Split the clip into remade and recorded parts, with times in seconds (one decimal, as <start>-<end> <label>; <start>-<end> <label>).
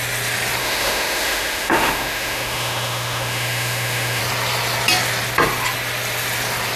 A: 0.0-0.6 recorded; 0.6-4.2 remade; 4.2-6.8 recorded